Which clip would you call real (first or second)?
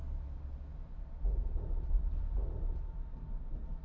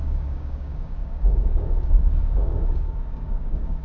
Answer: first